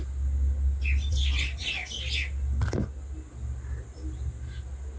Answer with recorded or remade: recorded